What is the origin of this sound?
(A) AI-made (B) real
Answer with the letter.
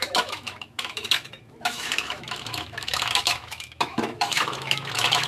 A